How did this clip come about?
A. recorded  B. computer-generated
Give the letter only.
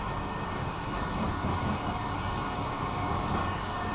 B